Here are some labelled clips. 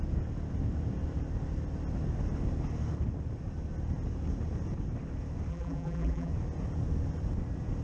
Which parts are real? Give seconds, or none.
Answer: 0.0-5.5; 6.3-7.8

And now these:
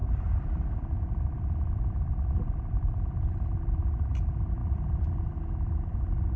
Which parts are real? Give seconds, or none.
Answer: 3.8-4.6; 5.2-6.4

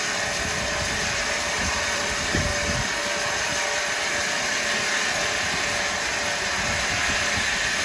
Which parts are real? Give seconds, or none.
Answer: 2.5-6.8

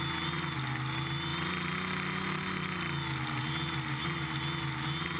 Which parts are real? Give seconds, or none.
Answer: 0.0-5.2

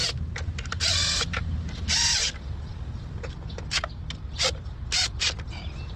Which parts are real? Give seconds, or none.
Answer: 2.2-5.5